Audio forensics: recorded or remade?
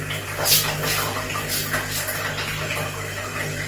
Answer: recorded